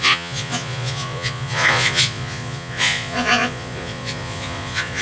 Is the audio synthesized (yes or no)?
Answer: yes